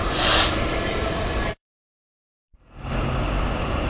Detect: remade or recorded remade